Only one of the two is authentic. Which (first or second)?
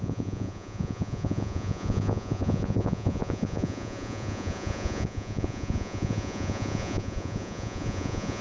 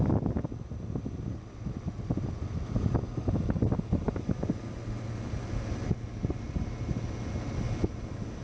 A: second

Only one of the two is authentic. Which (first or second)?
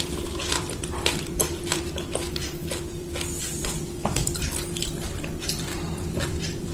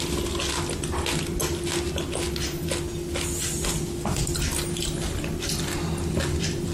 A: second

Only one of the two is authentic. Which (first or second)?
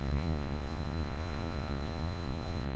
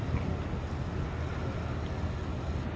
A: second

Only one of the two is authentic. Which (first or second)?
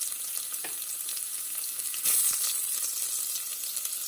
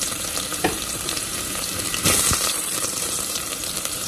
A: first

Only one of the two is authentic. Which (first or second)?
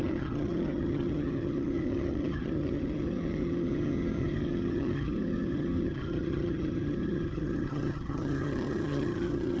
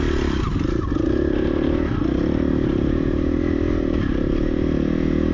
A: second